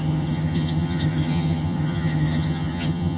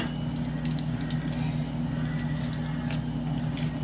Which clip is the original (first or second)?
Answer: second